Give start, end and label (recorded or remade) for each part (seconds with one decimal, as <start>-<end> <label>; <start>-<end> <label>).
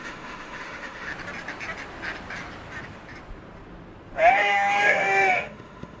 0.0-1.1 remade; 1.1-4.3 recorded; 4.3-6.0 remade